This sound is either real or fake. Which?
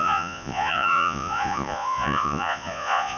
fake